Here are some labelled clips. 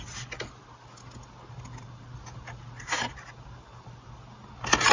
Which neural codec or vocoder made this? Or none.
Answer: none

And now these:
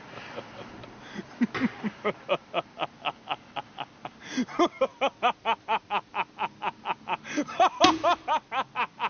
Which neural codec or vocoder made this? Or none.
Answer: none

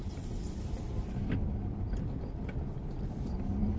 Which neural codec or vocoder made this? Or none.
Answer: none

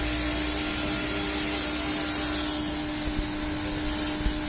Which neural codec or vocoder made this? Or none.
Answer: none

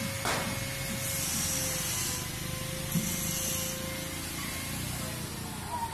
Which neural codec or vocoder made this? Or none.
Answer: none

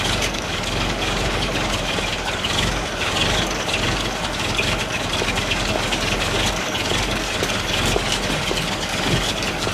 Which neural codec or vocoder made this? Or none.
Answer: codec, DAC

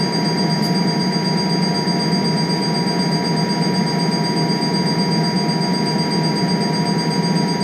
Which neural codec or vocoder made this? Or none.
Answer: none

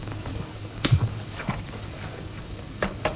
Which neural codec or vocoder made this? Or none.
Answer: codec, DAC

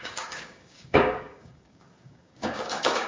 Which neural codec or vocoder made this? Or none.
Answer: codec, DAC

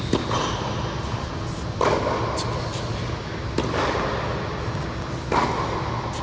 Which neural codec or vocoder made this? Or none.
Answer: none